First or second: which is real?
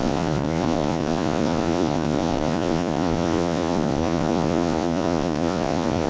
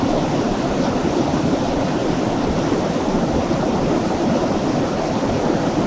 second